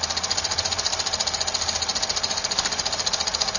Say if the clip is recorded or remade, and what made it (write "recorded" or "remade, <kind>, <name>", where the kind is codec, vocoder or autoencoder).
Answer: recorded